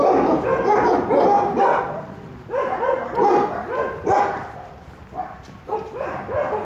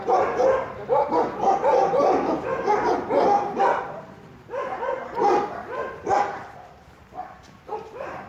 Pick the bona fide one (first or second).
first